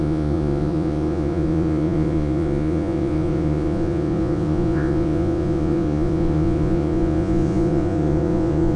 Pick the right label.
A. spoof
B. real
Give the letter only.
A